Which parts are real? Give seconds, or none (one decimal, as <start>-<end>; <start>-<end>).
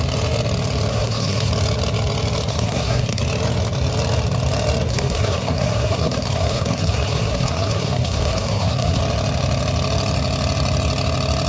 0.0-0.9; 1.5-2.5; 3.2-4.9; 9.0-11.5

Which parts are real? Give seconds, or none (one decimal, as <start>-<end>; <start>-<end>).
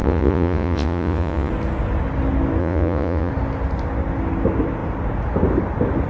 1.5-2.6; 3.3-6.1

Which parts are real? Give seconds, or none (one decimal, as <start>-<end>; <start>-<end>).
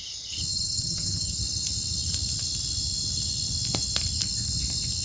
0.0-0.5; 1.4-5.0